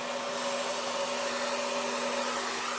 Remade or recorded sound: recorded